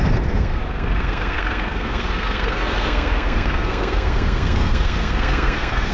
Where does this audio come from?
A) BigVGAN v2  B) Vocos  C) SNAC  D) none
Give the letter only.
C